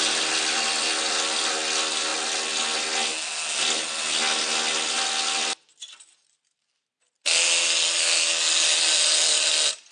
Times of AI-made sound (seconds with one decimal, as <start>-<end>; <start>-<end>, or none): none